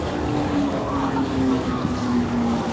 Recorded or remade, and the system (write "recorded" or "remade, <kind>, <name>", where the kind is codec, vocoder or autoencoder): remade, codec, DAC